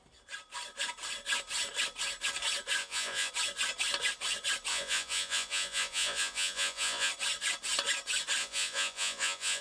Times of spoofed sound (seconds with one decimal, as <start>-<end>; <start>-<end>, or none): 2.8-3.3; 4.7-7.1; 8.4-9.6